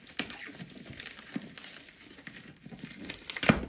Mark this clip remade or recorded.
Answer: recorded